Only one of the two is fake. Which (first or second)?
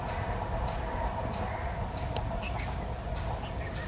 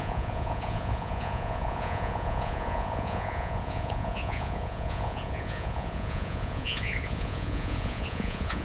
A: second